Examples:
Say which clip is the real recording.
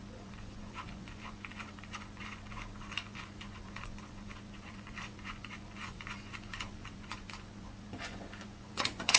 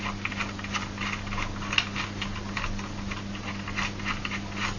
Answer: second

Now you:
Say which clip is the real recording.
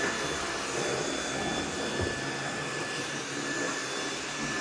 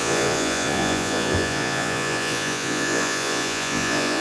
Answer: first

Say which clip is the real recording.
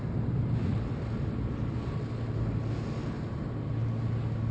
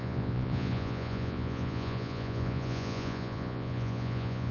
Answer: first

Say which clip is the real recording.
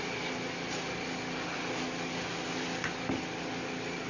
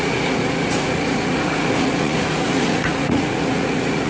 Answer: first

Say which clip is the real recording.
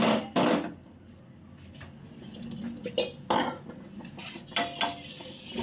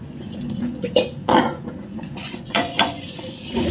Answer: first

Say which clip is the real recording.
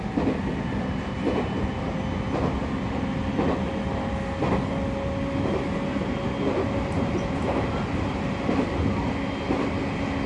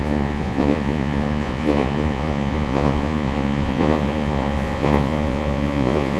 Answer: first